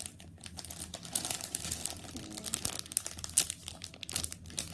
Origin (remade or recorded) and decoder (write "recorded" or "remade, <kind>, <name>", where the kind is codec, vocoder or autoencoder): recorded